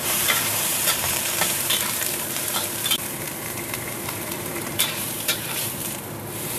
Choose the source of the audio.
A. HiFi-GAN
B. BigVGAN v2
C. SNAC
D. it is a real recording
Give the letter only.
B